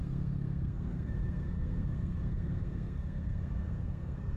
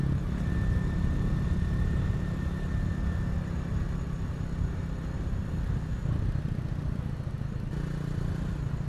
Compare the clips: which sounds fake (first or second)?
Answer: first